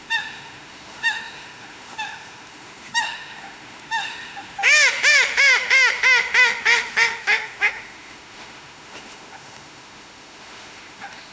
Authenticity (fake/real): fake